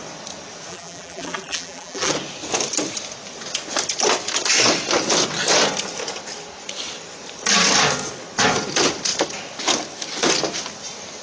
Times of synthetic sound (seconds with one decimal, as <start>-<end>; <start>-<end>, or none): 0.7-2.1